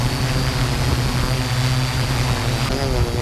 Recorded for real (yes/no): yes